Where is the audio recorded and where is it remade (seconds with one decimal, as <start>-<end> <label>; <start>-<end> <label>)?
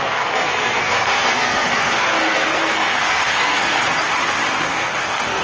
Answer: 0.0-3.8 remade; 3.8-4.7 recorded; 4.7-5.4 remade